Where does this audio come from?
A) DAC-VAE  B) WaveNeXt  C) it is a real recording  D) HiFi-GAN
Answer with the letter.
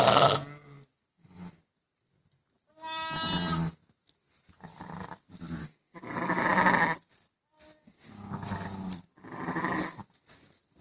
C